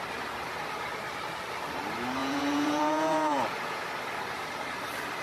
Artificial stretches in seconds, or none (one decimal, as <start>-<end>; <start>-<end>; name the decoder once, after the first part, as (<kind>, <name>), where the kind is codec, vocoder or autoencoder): 2.2-3.8 (vocoder, Vocos)